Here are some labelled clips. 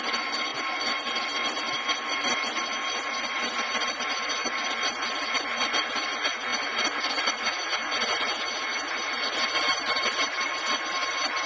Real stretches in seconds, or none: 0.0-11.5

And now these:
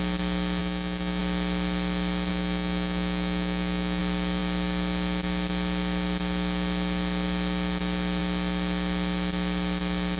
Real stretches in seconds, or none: 0.0-0.6; 1.2-2.3; 4.0-10.2

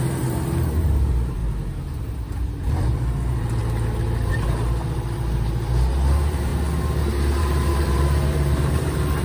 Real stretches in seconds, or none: 1.4-2.0; 3.6-4.3; 6.5-7.4

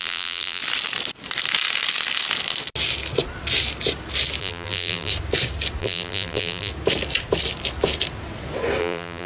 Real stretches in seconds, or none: 0.6-4.4; 5.1-5.8; 6.7-8.8

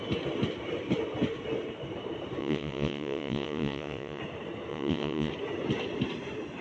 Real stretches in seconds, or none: 0.0-2.4; 4.2-4.7; 5.3-6.6